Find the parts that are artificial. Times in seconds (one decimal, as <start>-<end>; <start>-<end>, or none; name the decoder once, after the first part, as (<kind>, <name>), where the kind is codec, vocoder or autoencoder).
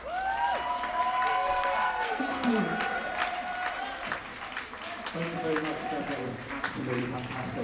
1.3-2.5 (codec, SNAC)